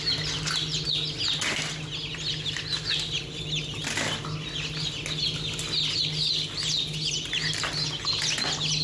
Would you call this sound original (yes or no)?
yes